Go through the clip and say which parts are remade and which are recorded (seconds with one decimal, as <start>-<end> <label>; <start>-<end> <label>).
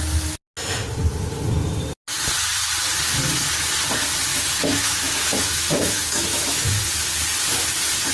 0.0-4.3 recorded; 4.3-6.8 remade; 6.8-8.1 recorded